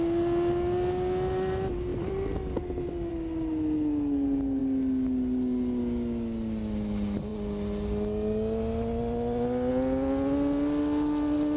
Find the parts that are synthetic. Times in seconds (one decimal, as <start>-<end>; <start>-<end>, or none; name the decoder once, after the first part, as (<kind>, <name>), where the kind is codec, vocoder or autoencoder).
none